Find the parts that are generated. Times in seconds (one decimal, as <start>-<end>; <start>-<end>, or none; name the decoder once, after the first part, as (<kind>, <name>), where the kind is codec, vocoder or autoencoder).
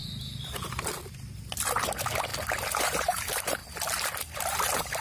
1.8-2.3 (vocoder, BigVGAN v2); 2.8-3.6; 4.3-5.0